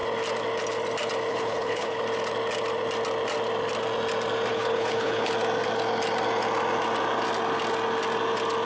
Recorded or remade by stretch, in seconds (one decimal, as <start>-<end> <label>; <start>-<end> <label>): 0.0-1.3 recorded; 1.3-2.0 remade; 2.0-4.5 recorded; 4.5-5.3 remade; 5.3-8.7 recorded